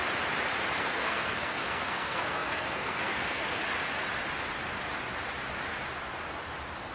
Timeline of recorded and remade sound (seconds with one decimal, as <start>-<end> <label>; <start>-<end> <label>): 0.0-0.8 recorded; 0.8-3.6 remade; 3.6-6.9 recorded